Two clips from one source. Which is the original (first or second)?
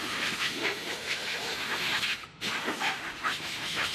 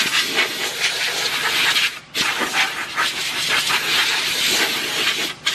second